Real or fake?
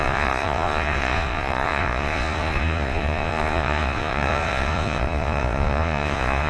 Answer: fake